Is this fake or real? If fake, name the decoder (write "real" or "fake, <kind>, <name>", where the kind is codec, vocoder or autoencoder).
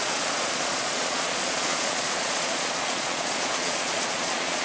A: fake, vocoder, Vocos